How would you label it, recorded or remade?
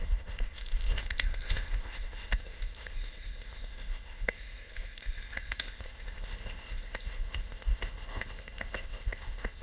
remade